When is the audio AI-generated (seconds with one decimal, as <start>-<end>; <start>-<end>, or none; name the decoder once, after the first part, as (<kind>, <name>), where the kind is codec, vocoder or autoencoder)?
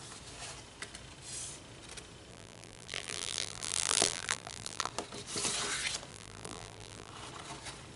2.3-4.9 (vocoder, BigVGAN v2); 6.1-7.1